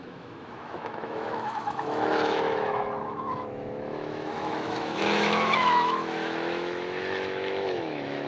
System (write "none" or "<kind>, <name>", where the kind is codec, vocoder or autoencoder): autoencoder, DAC-VAE